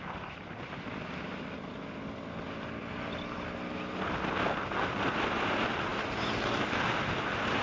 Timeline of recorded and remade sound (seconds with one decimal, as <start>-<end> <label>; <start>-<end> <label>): 0.0-5.9 recorded; 5.9-6.9 remade; 6.9-7.6 recorded